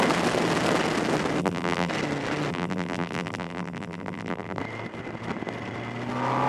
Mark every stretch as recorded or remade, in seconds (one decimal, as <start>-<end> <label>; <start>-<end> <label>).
0.0-1.4 recorded; 1.4-1.9 remade; 1.9-2.5 recorded; 2.5-4.6 remade; 4.6-6.5 recorded